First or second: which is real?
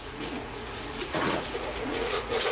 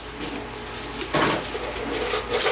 second